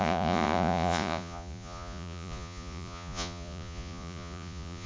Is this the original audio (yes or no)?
no